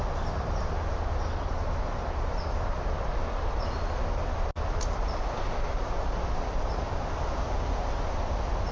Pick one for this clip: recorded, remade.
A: recorded